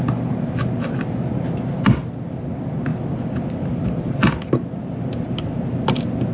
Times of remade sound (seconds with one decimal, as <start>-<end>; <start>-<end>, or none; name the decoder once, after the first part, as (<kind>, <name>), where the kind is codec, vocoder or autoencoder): none